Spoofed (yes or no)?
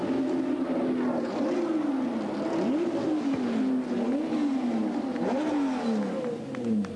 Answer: no